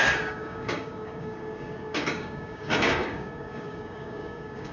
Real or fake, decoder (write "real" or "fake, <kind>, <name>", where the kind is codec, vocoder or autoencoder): fake, codec, DAC